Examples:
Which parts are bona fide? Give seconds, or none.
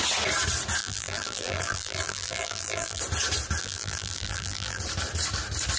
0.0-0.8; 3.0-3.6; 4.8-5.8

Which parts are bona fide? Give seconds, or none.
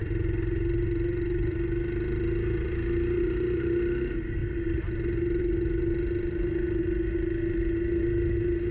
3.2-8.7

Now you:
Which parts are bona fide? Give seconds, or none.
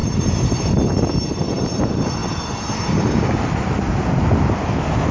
0.8-5.1